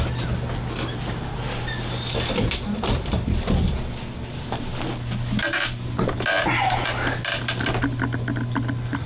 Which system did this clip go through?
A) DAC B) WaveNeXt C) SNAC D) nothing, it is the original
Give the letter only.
D